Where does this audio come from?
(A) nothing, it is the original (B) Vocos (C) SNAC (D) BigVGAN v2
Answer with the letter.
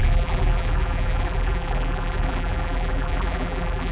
D